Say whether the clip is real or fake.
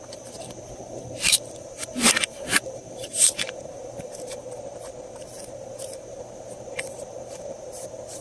fake